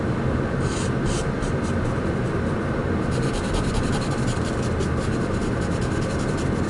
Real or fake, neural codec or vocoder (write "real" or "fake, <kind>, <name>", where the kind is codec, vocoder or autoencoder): fake, vocoder, BigVGAN v2